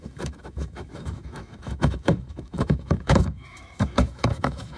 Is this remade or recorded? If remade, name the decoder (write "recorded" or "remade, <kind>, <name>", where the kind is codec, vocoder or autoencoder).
remade, autoencoder, DAC-VAE